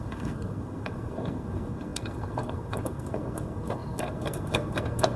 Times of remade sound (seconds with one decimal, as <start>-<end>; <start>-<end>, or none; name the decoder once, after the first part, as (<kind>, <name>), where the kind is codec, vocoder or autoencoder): 0.0-5.2 (codec, SNAC)